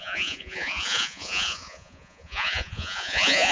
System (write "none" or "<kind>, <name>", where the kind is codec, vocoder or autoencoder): vocoder, Vocos